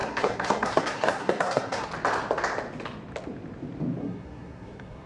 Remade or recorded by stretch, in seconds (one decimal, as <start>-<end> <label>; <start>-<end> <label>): 0.0-1.9 remade; 1.9-4.0 recorded; 4.0-5.1 remade